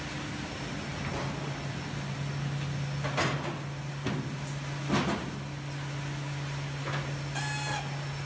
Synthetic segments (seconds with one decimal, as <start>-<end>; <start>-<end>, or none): none